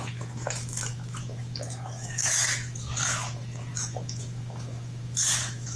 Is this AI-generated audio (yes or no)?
yes